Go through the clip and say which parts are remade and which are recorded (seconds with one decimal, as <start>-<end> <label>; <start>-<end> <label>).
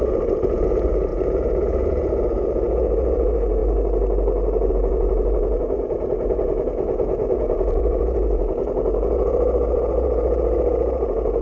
0.0-3.6 remade; 3.6-4.7 recorded; 4.7-11.4 remade